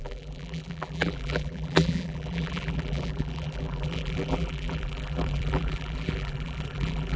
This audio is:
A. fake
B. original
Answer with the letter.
A